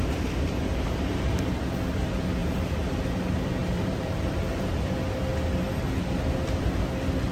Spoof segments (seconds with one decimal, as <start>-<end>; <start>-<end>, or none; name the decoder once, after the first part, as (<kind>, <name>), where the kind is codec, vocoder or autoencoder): 0.7-1.4 (vocoder, BigVGAN v2); 2.4-2.9; 3.6-4.9